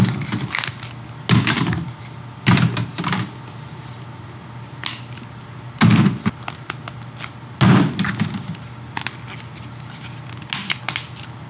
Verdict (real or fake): real